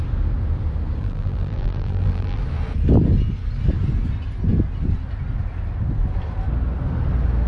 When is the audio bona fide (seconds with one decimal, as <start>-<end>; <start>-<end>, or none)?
0.0-1.0; 2.4-7.5